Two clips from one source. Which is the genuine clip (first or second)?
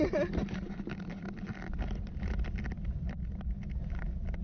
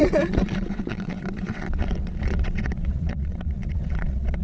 first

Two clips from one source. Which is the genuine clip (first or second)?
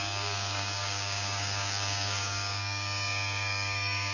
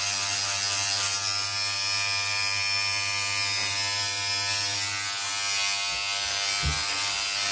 second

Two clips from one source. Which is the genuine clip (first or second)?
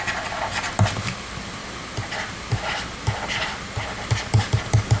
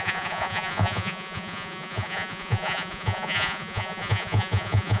first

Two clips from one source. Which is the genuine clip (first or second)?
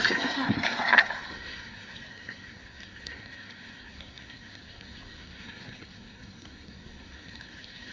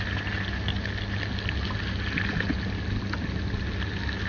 second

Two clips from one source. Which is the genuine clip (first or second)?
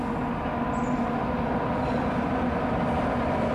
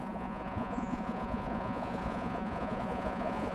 first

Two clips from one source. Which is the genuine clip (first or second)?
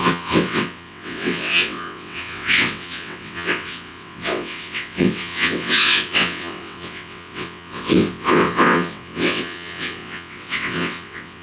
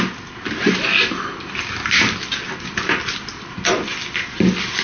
second